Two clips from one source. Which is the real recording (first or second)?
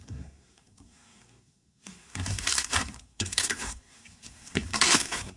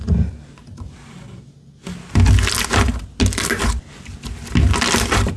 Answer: second